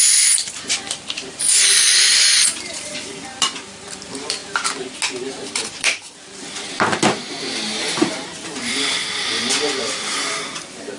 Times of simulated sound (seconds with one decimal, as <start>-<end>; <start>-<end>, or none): 0.0-4.4; 5.3-9.0; 9.8-11.0